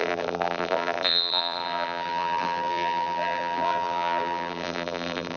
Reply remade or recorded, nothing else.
remade